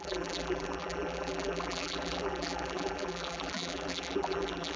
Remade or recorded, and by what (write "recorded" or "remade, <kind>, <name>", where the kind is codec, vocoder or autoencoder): remade, vocoder, BigVGAN v2